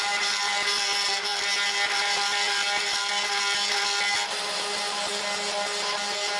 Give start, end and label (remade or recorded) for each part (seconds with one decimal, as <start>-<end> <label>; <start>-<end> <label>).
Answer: 0.0-6.4 recorded